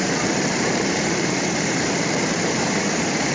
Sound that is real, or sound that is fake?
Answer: fake